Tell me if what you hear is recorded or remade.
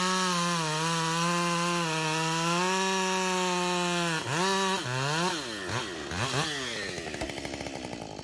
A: recorded